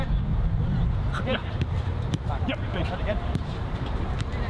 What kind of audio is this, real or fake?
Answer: fake